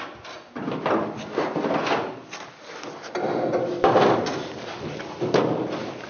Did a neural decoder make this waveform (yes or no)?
no